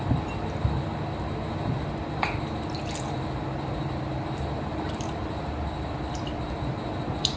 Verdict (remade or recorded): recorded